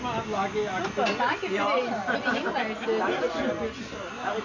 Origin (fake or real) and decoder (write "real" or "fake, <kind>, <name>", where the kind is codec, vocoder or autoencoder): real